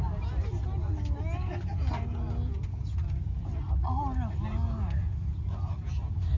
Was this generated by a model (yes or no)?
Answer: no